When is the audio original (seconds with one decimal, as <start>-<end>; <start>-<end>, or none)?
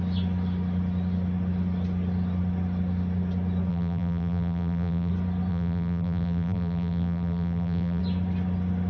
0.0-3.7; 5.1-5.5; 8.0-8.9